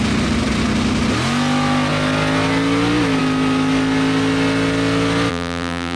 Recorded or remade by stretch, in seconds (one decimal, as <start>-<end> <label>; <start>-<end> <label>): 0.0-5.3 recorded; 5.3-6.0 remade

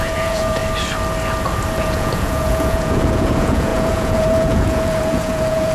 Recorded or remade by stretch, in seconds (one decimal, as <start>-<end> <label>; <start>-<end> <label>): 0.0-0.6 remade; 0.6-1.8 recorded; 1.8-5.7 remade

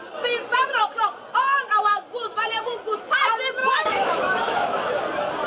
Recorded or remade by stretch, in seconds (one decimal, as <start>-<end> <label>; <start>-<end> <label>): 0.0-3.6 recorded; 3.6-5.0 remade; 5.0-5.5 recorded

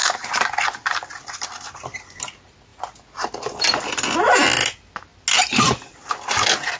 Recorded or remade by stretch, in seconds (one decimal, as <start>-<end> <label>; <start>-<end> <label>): 0.0-6.8 recorded

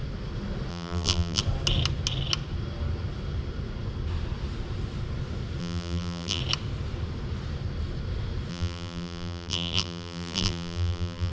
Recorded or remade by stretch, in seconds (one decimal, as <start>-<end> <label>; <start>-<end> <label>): 0.0-0.7 recorded; 0.7-1.4 remade; 1.4-5.6 recorded; 5.6-6.4 remade; 6.4-8.5 recorded; 8.5-11.3 remade

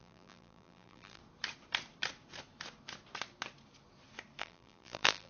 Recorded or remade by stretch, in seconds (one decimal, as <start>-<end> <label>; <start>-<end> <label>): 0.0-1.2 remade; 1.2-4.4 recorded; 4.4-5.3 remade